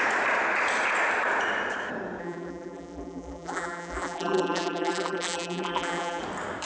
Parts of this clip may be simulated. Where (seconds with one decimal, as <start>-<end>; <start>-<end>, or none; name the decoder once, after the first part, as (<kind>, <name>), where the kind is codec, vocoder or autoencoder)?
2.2-6.2 (vocoder, BigVGAN v2)